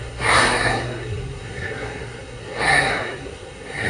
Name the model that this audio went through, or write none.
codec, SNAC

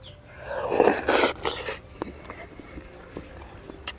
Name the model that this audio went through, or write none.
none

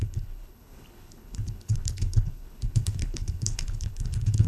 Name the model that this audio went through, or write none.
codec, HILCodec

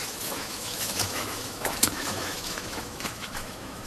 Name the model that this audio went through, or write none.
autoencoder, DAC-VAE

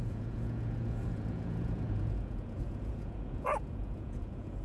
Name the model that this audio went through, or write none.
vocoder, Vocos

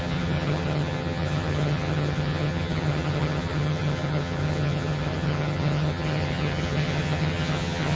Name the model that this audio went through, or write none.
vocoder, HiFi-GAN